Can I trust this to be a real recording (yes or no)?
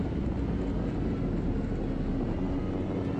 yes